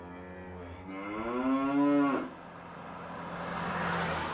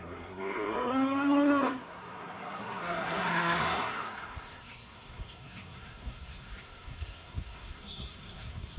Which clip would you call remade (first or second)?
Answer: second